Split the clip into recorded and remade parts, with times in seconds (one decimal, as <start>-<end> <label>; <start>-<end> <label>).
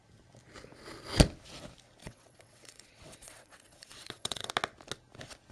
0.0-2.0 recorded; 2.0-4.5 remade; 4.5-5.5 recorded